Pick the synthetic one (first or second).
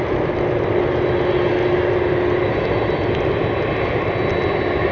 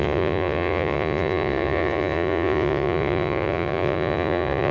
second